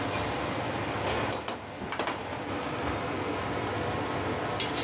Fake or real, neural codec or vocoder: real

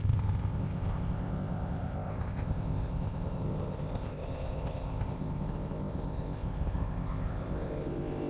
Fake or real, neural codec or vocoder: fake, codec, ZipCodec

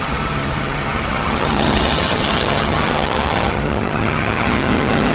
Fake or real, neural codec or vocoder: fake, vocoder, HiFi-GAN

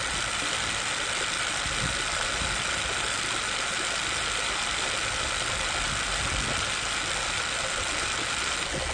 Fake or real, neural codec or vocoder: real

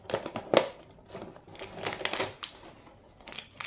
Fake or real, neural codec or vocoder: real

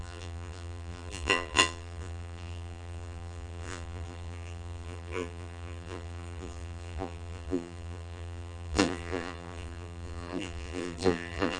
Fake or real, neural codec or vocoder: fake, vocoder, BigVGAN v2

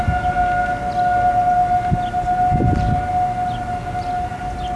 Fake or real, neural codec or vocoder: real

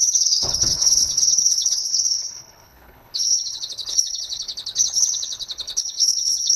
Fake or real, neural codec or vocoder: fake, codec, HILCodec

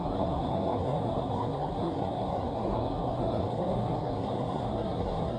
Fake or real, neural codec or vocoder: fake, codec, SNAC